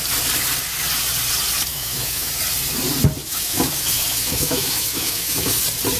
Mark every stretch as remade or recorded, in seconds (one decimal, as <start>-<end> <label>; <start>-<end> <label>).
0.0-1.7 recorded; 1.7-2.3 remade; 2.3-3.2 recorded; 3.2-5.6 remade; 5.6-6.0 recorded